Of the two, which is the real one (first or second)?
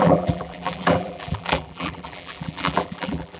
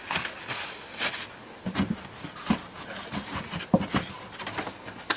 second